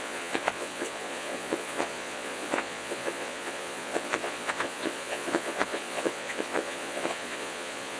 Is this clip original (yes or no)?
no